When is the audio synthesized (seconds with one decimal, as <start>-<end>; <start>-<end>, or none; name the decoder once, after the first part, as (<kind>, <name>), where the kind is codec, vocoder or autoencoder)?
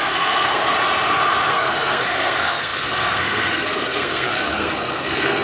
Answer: 0.0-0.6 (codec, SNAC); 1.5-5.4